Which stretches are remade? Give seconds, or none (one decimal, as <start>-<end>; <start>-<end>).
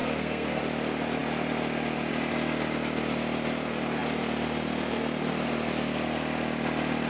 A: 0.0-0.6